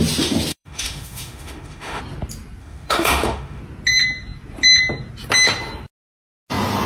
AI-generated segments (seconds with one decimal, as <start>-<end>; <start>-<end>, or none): 0.5-2.0; 2.6-3.6